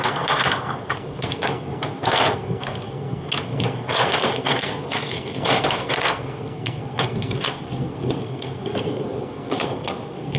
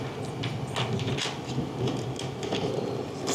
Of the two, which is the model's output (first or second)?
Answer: first